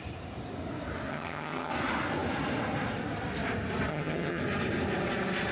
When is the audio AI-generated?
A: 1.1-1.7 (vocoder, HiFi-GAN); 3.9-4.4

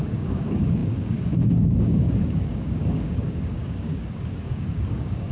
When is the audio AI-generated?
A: 0.0-5.3 (codec, DAC)

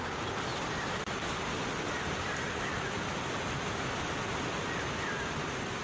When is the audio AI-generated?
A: none

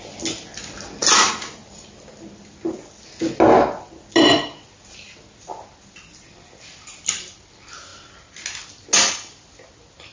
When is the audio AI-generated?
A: none

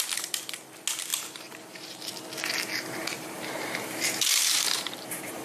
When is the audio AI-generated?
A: 1.1-2.1 (vocoder, BigVGAN v2); 3.0-5.4

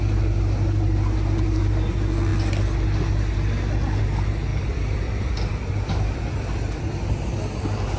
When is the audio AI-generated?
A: 4.5-6.8 (vocoder, BigVGAN v2)

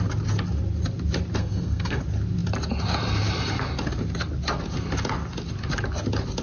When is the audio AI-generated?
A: 1.4-2.0 (codec, SNAC)

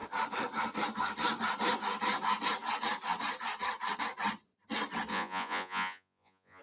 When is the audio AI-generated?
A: 5.1-6.6 (vocoder, Vocos)